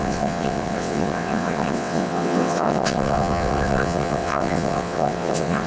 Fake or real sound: fake